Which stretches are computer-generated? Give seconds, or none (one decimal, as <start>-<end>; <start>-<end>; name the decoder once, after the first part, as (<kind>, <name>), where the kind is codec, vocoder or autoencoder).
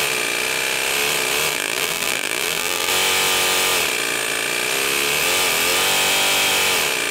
1.5-2.9 (vocoder, BigVGAN v2)